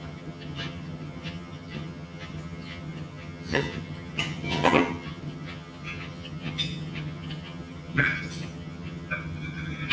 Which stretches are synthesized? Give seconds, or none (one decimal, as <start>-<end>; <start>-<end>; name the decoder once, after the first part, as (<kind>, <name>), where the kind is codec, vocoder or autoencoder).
0.0-9.9 (vocoder, HiFi-GAN)